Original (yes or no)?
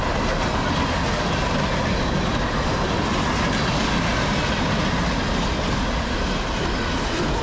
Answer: yes